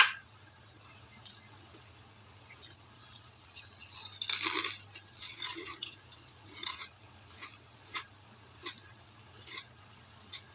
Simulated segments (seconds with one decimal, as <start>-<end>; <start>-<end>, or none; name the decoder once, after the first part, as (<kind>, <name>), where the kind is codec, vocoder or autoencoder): 0.0-4.0 (vocoder, Vocos); 5.1-10.5